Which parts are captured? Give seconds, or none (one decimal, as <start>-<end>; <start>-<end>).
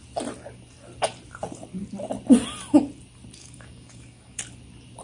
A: 0.0-3.4; 4.4-5.0